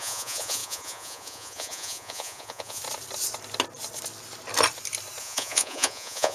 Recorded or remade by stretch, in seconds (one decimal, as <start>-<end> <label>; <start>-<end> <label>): 0.0-2.8 remade; 2.8-5.2 recorded; 5.2-6.3 remade